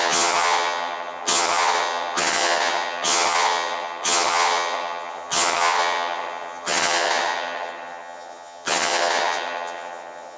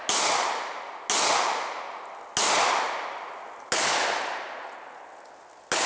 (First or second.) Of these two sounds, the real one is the second